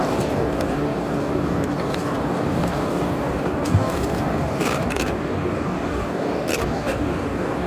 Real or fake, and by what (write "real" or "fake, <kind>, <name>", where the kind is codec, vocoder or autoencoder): fake, codec, DAC